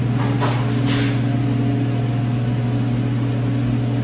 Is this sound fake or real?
real